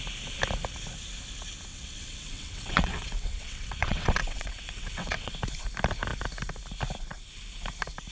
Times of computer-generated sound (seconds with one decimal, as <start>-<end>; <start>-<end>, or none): 1.7-5.3

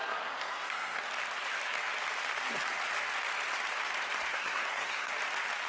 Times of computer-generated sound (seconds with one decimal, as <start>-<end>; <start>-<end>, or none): 0.0-1.0; 4.3-5.1

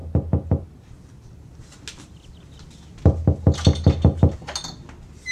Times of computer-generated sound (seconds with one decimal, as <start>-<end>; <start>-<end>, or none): none

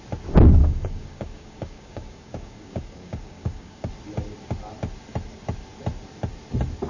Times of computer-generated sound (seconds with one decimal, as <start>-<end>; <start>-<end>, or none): 0.6-3.9

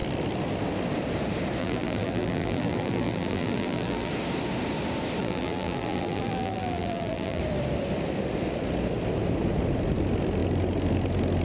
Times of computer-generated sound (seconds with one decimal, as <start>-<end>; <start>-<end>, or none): 1.6-4.1; 5.2-7.4

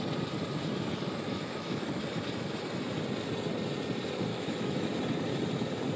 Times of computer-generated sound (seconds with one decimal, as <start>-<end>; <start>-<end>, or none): 0.9-2.0; 4.3-4.9

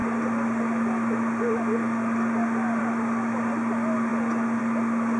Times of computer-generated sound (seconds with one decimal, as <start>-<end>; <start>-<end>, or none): none

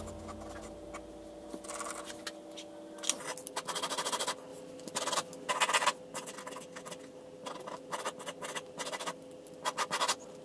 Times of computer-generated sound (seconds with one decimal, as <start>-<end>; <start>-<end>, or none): none